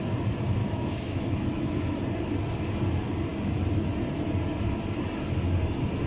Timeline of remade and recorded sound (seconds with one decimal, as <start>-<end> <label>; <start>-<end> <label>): 0.0-0.6 recorded; 0.6-2.0 remade; 2.0-6.1 recorded